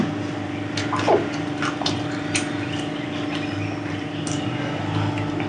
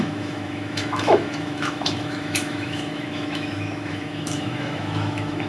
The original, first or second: first